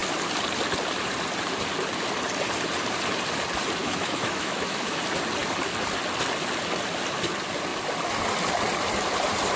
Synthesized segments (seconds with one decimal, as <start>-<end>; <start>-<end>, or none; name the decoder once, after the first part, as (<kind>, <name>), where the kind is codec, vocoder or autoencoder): 3.8-5.0 (autoencoder, DAC-VAE)